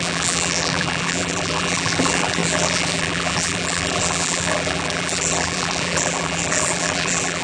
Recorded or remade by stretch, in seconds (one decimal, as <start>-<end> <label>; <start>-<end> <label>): 0.0-7.4 remade